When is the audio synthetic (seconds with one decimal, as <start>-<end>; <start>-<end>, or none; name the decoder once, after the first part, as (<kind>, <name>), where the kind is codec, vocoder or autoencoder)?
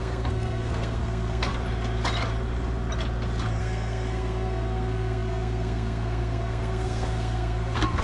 0.0-1.5 (codec, SNAC); 3.6-8.0